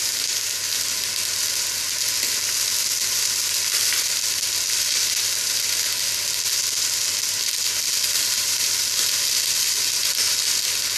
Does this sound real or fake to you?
real